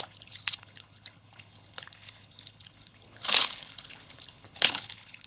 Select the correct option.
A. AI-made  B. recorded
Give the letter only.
A